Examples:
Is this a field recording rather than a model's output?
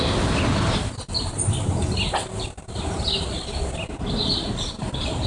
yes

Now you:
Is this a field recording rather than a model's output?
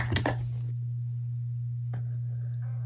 yes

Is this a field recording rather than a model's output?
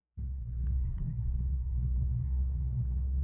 no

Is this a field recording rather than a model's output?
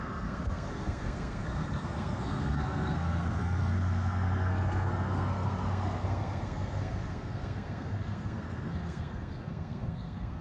no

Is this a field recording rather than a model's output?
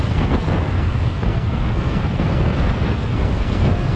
no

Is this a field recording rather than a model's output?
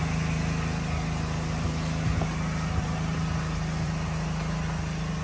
yes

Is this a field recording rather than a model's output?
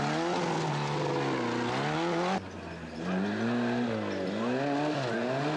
yes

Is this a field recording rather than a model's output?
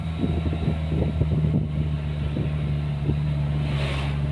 yes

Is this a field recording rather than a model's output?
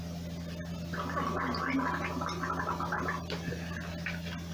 yes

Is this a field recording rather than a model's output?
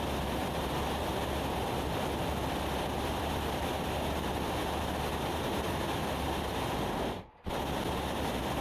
yes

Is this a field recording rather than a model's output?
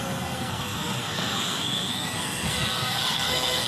no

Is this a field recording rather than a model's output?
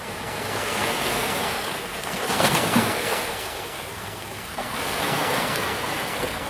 no